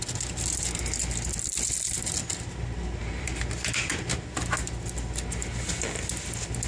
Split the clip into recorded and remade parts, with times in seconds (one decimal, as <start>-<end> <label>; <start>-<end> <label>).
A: 0.0-3.0 recorded; 3.0-3.9 remade; 3.9-6.7 recorded